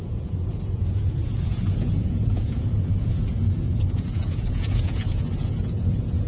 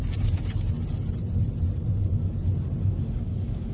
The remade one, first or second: first